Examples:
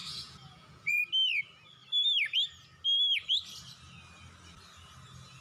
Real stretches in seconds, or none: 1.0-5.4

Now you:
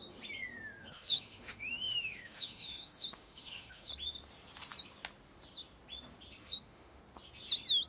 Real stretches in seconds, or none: 0.0-0.8; 3.9-6.4; 7.0-7.9

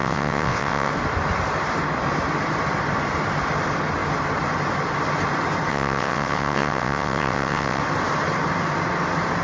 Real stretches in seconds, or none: 0.9-5.7; 7.8-9.4